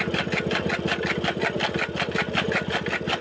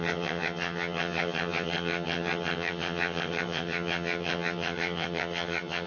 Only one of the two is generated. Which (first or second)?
second